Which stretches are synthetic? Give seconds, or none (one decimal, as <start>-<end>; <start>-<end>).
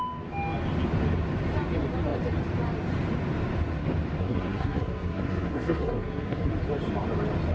4.2-6.5